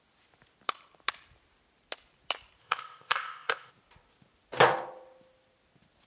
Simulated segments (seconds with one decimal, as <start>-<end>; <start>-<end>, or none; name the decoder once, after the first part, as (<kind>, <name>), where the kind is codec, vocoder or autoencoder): 2.6-3.7 (codec, ZipCodec)